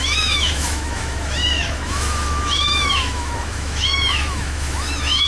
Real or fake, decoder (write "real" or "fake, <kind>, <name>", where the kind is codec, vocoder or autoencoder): fake, autoencoder, DAC-VAE